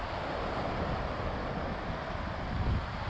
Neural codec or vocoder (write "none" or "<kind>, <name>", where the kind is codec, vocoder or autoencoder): none